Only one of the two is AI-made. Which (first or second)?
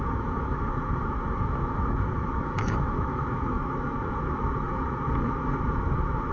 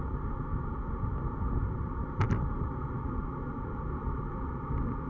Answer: first